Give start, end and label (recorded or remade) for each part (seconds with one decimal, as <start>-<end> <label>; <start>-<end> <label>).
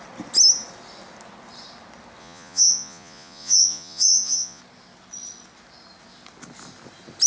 0.0-2.2 recorded; 2.2-4.6 remade; 4.6-7.3 recorded